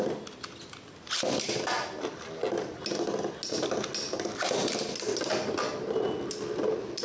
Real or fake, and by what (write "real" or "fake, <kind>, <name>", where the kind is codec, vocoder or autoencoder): real